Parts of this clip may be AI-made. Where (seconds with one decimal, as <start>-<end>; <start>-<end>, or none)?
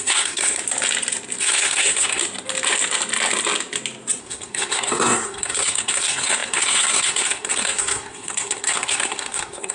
0.0-0.6; 1.4-2.2; 4.2-9.7